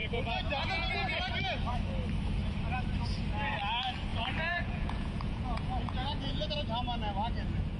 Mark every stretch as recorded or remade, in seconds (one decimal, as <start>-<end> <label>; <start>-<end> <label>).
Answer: 0.0-0.6 remade; 0.6-4.1 recorded; 4.1-6.5 remade; 6.5-7.8 recorded